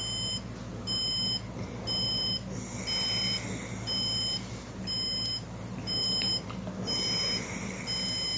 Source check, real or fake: real